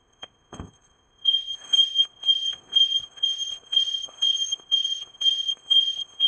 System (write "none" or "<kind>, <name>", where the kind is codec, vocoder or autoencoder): codec, ZipCodec